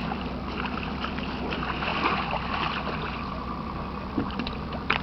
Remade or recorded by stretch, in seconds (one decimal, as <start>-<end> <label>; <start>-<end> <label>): 0.0-5.0 recorded